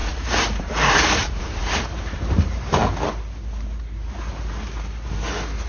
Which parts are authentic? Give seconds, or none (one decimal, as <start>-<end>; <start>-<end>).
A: 2.8-5.7